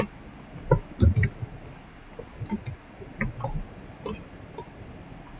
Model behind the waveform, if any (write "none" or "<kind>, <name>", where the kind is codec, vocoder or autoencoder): none